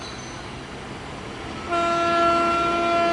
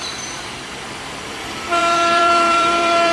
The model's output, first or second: second